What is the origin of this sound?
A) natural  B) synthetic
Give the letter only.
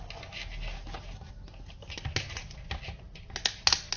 A